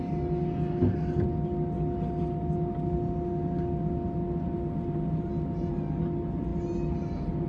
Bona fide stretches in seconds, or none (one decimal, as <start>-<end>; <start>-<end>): 0.0-7.5